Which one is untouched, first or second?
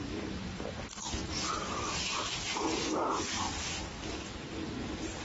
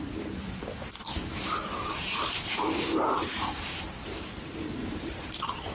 first